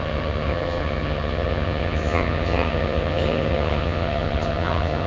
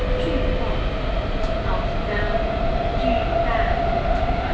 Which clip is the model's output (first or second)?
first